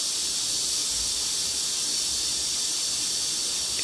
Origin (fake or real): real